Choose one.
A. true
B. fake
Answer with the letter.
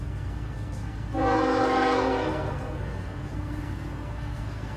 B